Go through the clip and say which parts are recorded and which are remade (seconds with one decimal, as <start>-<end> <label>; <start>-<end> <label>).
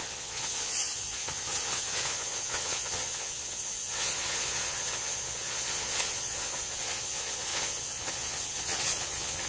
0.0-9.5 remade